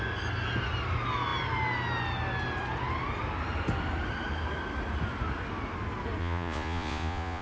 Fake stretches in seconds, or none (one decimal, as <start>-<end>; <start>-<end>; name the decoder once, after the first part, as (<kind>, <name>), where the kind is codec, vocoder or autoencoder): 6.2-7.4 (vocoder, Vocos)